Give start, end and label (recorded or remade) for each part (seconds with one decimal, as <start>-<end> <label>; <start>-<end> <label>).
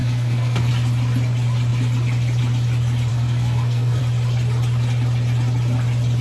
0.0-0.7 remade; 0.7-3.1 recorded; 3.1-4.0 remade; 4.0-6.2 recorded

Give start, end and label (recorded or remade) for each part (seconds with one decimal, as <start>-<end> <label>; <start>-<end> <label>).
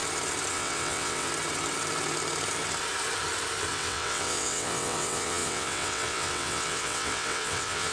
0.0-0.5 recorded; 0.5-1.3 remade; 1.3-3.7 recorded; 3.7-7.9 remade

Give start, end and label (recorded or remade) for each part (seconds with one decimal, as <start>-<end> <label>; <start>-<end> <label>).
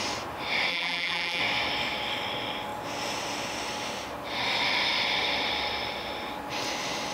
0.0-0.7 recorded; 0.7-1.4 remade; 1.4-7.1 recorded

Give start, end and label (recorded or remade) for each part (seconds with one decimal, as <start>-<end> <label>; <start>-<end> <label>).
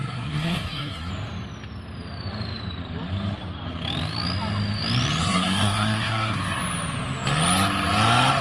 0.0-1.1 remade; 1.1-5.2 recorded; 5.2-6.6 remade; 6.6-8.4 recorded